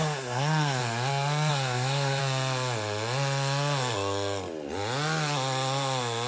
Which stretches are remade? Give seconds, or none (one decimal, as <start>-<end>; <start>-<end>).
0.0-0.8; 1.5-2.2